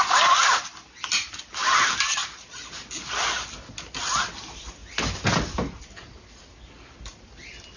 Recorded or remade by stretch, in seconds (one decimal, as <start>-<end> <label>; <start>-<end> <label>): 0.0-7.8 recorded